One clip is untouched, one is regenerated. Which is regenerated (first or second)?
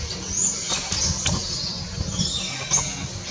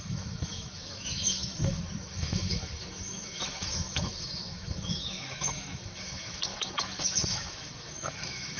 second